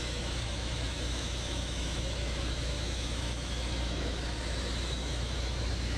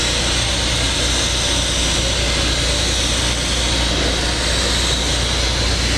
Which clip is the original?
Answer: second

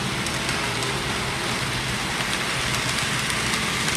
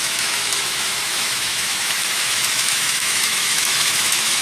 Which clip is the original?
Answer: first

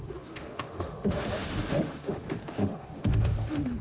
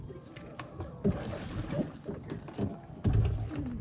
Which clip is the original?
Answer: second